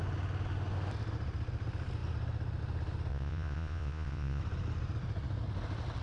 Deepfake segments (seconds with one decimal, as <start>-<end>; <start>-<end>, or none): 3.1-4.4